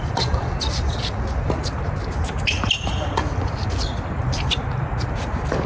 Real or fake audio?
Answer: real